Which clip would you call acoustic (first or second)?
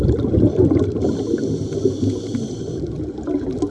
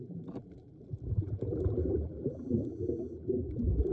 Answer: first